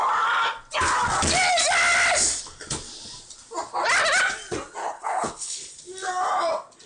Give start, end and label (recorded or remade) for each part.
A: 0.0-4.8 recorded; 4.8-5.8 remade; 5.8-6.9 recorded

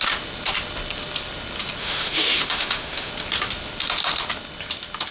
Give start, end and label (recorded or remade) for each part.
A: 0.0-1.8 recorded; 1.8-3.1 remade; 3.1-5.1 recorded